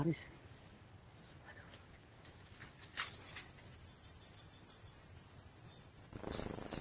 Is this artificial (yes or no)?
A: no